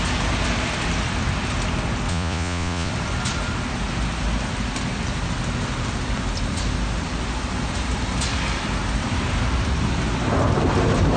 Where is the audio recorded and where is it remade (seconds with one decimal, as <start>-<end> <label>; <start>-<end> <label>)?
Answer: 0.0-2.1 recorded; 2.1-2.9 remade; 2.9-11.2 recorded